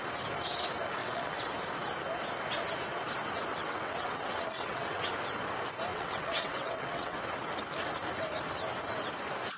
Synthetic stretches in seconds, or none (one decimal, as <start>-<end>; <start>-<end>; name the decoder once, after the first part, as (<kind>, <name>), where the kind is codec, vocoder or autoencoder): 1.0-1.5 (vocoder, WaveNeXt); 3.5-5.1; 5.9-7.2